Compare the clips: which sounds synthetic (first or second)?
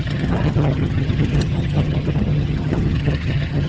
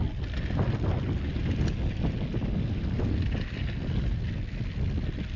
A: first